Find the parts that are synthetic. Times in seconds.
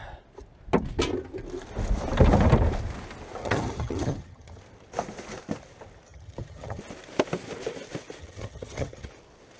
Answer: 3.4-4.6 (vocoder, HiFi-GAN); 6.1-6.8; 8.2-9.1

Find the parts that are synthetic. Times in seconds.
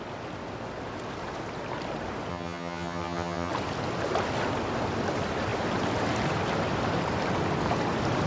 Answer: 2.3-3.5 (vocoder, HiFi-GAN)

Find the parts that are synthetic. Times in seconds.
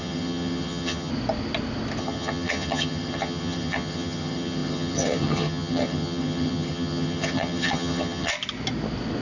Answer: 0.0-1.1 (vocoder, HiFi-GAN); 2.0-8.3